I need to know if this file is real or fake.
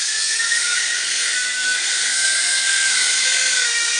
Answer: fake